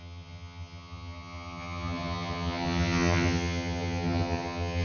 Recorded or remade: remade